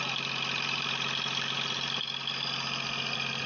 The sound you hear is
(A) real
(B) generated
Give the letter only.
A